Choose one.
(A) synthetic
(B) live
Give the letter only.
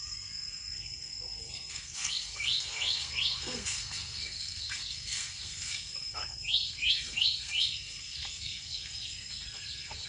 A